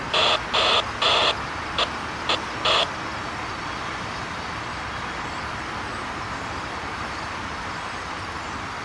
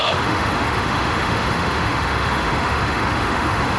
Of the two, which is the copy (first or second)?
second